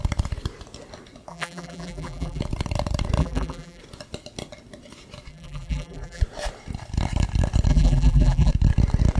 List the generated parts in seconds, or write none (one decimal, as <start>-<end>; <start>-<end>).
1.3-2.4; 3.2-3.8; 5.3-6.2; 7.7-8.5